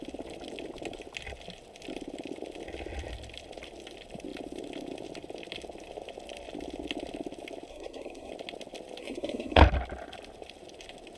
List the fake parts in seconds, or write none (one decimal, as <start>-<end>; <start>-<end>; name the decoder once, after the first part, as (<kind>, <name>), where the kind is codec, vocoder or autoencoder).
7.7-8.3 (codec, SNAC); 9.0-9.6